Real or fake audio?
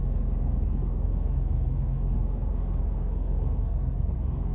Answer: fake